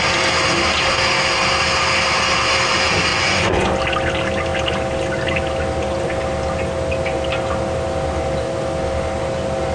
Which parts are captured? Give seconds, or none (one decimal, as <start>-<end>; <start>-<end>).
0.0-3.1; 3.7-9.7